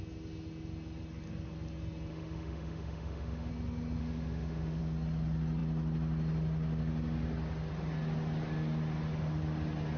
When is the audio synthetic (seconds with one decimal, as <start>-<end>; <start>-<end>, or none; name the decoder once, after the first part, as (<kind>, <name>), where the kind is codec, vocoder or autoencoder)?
2.1-3.5 (autoencoder, DAC-VAE); 4.0-4.8